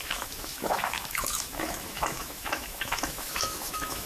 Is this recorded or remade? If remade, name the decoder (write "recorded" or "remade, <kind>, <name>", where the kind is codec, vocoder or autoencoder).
remade, autoencoder, DAC-VAE